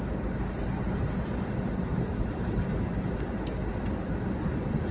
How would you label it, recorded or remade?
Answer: recorded